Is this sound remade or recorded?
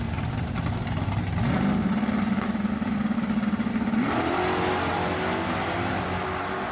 recorded